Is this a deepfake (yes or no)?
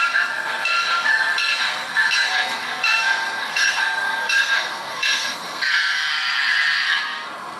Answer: yes